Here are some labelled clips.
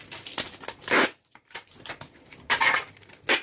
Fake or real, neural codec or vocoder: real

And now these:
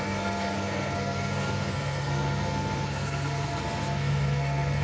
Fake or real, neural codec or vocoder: fake, codec, SNAC